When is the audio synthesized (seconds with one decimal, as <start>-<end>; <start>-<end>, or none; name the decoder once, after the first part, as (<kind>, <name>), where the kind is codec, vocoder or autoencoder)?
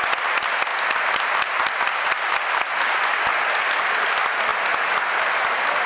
none